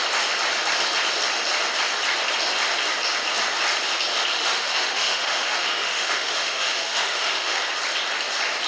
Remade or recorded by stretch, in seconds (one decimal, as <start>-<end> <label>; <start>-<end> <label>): 0.0-4.3 recorded; 4.3-7.6 remade; 7.6-8.7 recorded